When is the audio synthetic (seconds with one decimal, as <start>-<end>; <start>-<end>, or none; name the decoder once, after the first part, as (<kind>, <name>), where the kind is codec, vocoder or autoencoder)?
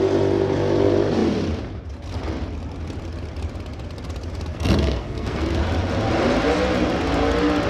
4.5-5.6 (codec, SNAC)